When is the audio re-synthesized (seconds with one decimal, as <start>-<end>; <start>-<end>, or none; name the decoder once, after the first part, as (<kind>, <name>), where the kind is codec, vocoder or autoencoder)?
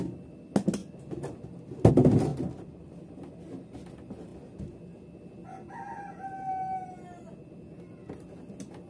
none